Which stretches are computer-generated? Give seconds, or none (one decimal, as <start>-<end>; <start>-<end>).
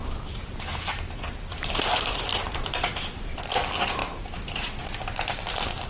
0.0-3.5; 4.0-4.8